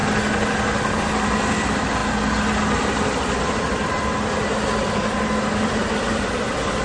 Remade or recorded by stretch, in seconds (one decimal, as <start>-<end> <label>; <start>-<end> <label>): 0.0-6.8 recorded